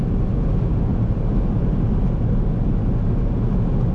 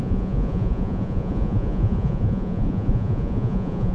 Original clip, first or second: first